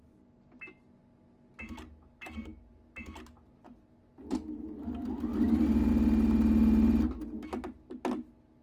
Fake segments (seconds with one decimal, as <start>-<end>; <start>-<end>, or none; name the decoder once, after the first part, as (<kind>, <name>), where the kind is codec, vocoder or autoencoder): none